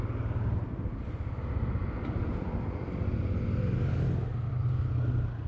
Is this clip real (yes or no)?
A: yes